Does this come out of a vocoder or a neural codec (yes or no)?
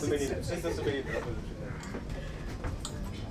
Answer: no